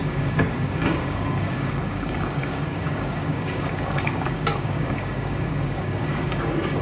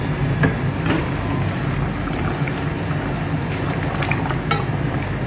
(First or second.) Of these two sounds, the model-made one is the first